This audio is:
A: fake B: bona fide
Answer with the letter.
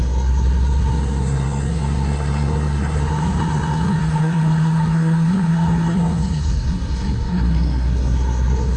A